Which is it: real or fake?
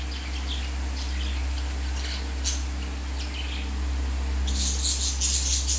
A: real